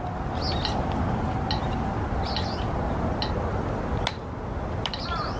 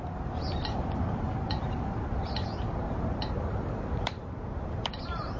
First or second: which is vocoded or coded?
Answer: second